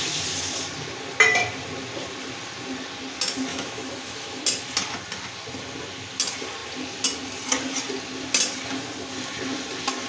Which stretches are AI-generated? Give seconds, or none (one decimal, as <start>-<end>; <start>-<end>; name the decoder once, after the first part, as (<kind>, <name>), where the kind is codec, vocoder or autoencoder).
3.5-4.4 (autoencoder, DAC-VAE)